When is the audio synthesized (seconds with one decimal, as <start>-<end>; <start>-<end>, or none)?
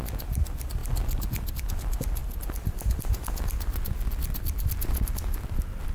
none